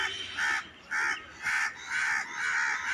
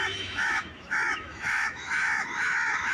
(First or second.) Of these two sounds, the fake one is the second